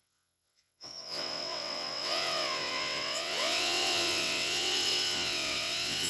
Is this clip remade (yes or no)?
yes